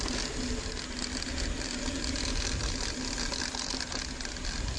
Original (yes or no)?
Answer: yes